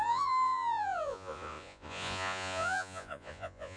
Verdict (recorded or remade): remade